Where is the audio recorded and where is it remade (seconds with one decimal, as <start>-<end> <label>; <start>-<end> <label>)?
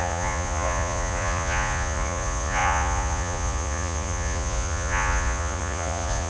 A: 0.0-6.3 remade